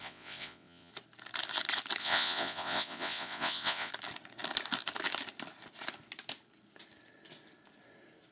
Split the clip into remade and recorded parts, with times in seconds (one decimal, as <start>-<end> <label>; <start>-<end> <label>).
0.0-0.9 remade; 0.9-2.0 recorded; 2.0-3.9 remade; 3.9-8.3 recorded